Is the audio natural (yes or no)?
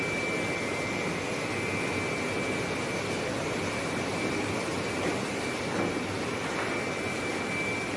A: yes